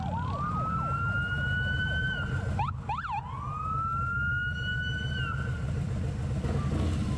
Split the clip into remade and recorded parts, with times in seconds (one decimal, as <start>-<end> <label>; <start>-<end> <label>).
0.0-7.2 recorded